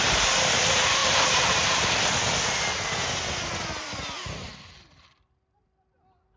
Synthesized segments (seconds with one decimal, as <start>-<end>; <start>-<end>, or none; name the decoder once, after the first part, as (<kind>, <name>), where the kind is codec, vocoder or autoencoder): none

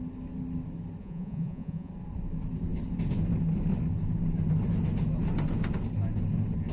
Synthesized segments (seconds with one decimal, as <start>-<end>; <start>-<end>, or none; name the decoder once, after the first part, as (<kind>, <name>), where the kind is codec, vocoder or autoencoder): 1.0-1.9 (vocoder, Vocos)

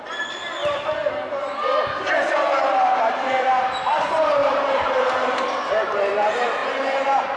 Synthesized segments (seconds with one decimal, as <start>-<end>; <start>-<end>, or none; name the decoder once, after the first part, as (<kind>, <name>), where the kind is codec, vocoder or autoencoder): 4.4-5.0 (vocoder, BigVGAN v2); 6.6-7.4